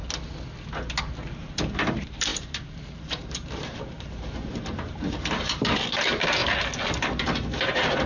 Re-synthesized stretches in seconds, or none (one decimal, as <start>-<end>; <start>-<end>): 1.0-6.4; 6.9-8.1